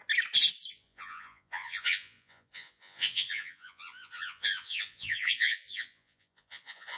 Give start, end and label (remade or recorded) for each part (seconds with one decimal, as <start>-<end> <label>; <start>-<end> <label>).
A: 0.0-0.7 recorded; 0.7-7.0 remade